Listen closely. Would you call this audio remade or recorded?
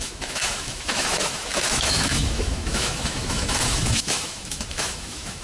remade